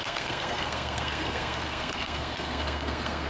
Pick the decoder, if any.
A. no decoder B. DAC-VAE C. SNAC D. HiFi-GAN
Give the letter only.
C